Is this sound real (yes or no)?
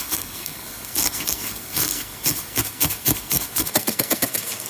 no